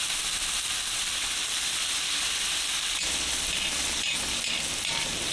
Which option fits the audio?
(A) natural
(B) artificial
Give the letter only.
A